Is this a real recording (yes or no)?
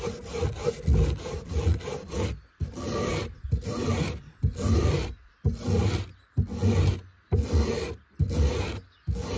yes